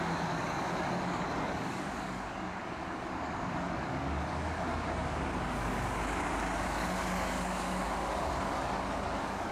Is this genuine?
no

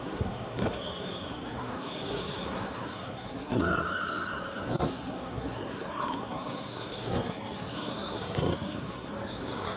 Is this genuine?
no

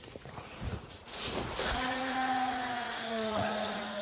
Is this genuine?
no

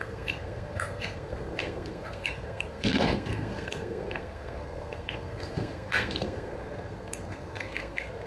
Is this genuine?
no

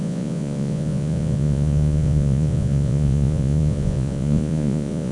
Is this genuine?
no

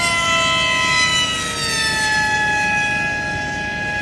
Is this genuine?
yes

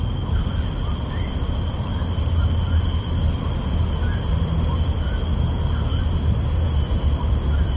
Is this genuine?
no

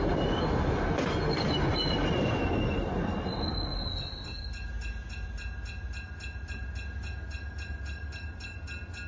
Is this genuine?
yes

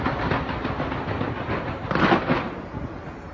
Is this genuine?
yes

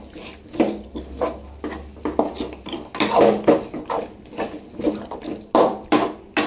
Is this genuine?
yes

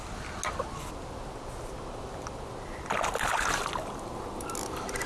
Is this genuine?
yes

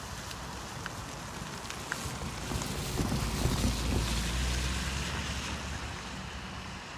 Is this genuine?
yes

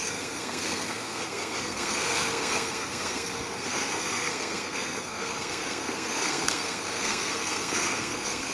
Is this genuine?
no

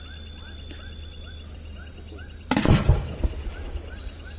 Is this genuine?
yes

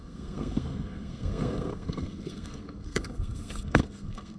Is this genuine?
no